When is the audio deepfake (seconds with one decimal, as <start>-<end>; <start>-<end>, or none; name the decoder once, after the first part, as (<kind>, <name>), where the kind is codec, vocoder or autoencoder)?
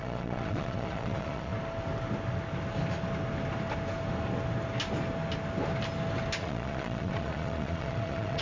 0.0-1.5 (vocoder, Vocos); 6.4-8.4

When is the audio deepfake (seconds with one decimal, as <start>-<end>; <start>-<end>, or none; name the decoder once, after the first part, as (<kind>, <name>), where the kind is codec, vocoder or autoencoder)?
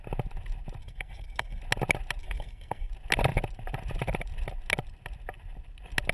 0.8-1.6 (codec, SNAC); 2.2-2.9